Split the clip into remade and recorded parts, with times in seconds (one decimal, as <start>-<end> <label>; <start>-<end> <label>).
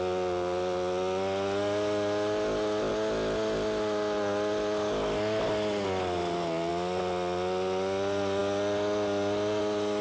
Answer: 0.0-10.0 recorded